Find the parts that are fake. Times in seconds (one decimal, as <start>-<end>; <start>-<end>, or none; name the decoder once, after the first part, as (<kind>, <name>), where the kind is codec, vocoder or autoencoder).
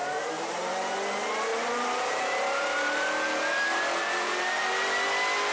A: 0.0-0.7 (vocoder, BigVGAN v2); 1.5-4.7